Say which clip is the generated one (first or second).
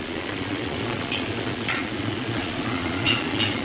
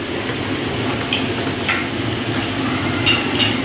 first